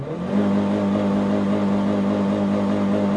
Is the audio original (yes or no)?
yes